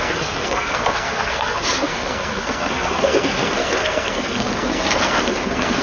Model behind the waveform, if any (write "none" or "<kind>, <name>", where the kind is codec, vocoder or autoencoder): codec, SNAC